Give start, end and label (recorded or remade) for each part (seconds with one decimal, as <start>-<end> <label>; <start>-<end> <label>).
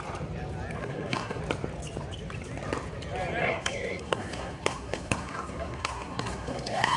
0.0-0.8 recorded; 0.8-1.4 remade; 1.4-3.4 recorded; 3.4-7.0 remade